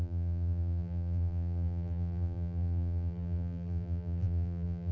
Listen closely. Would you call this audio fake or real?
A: fake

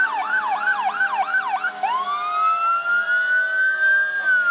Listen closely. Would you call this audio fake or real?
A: real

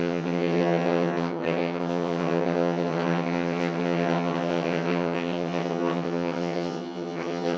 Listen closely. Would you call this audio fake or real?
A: fake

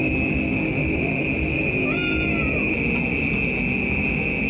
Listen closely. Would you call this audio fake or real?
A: real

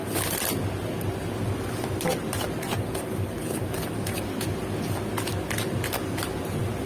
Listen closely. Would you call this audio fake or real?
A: real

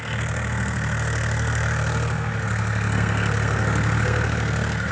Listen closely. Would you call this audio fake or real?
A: fake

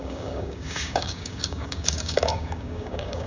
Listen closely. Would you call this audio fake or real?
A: fake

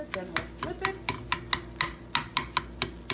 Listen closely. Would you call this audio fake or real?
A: real